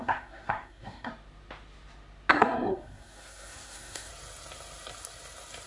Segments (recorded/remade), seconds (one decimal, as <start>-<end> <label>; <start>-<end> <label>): 0.0-1.1 remade; 1.1-2.3 recorded; 2.3-4.1 remade; 4.1-5.7 recorded